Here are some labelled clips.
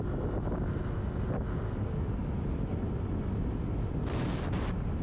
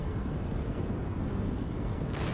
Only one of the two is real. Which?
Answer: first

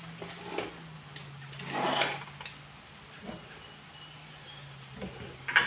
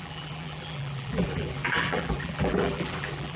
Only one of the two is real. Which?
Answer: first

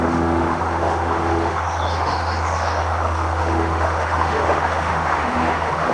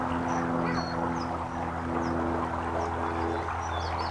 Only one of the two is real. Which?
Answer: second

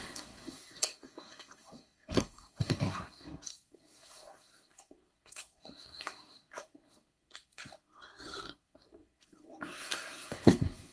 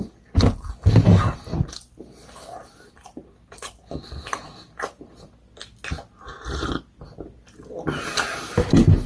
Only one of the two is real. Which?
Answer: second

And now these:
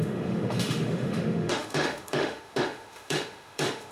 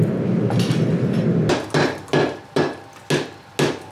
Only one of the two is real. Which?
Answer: second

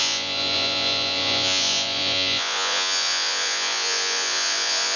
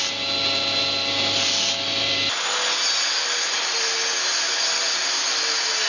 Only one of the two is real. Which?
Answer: second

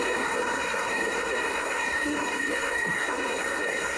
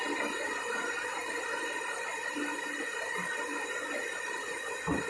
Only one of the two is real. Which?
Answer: second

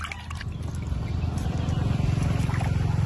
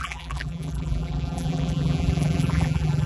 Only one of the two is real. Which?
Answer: first